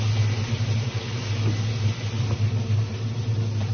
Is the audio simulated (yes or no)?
no